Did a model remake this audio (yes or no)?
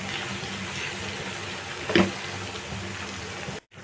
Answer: no